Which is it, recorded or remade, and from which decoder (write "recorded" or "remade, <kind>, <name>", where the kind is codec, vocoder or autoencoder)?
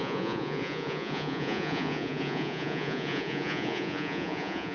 remade, vocoder, Vocos